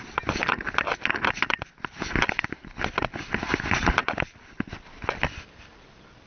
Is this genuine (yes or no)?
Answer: yes